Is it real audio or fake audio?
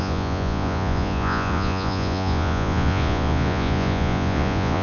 fake